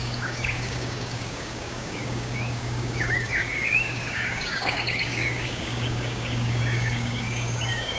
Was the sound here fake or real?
fake